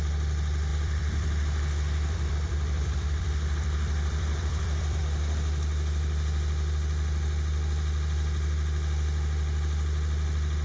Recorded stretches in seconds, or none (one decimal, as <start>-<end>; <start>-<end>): 0.0-0.7; 5.0-10.6